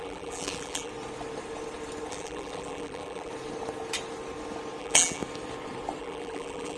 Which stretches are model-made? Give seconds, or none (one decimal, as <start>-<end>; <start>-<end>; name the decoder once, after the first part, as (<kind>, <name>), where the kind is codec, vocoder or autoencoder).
0.0-0.9 (vocoder, BigVGAN v2); 2.1-3.3; 4.8-5.2; 6.0-6.8